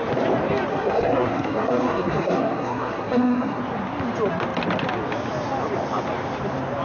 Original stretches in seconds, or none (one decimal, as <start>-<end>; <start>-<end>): 0.0-0.7; 3.6-6.8